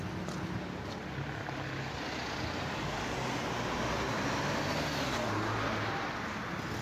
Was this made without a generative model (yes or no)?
yes